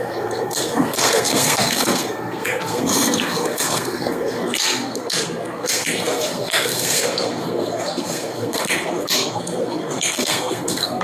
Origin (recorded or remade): remade